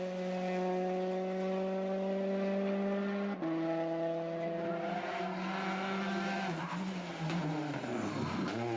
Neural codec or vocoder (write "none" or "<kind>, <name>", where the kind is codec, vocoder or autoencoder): none